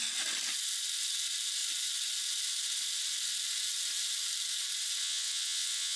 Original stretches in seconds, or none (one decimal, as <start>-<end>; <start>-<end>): 0.0-5.0

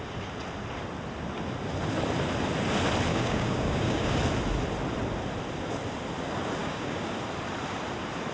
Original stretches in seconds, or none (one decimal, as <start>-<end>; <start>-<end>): 0.0-3.1; 4.2-6.6; 7.1-8.3

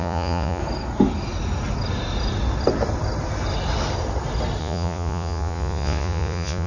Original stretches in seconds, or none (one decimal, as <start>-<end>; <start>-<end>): 0.6-4.6

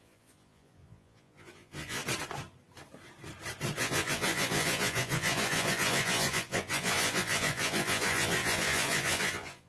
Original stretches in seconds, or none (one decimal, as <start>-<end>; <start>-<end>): 2.0-3.8

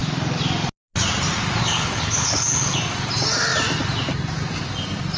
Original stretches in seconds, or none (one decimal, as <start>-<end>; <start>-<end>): 0.0-1.6; 2.8-5.2

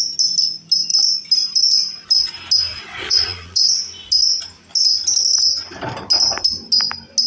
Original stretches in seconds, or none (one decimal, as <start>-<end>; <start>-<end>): 0.0-2.7; 3.7-7.3